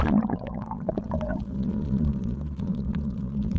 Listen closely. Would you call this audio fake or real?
fake